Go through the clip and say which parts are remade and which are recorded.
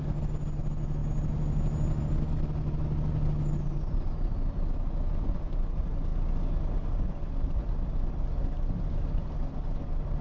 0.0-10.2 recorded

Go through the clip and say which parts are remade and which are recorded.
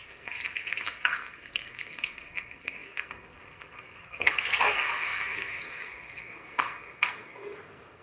0.0-8.0 remade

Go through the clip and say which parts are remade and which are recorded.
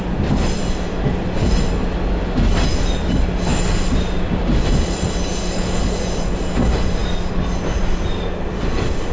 0.0-9.1 recorded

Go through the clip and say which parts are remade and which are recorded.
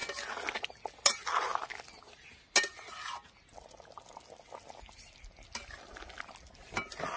0.0-7.2 recorded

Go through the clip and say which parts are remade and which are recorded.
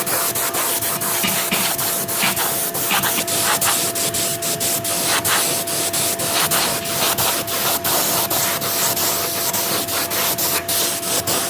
0.0-11.5 recorded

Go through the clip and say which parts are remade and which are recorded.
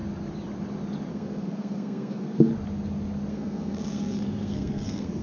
0.0-1.1 recorded; 1.1-2.5 remade; 2.5-3.3 recorded; 3.3-5.2 remade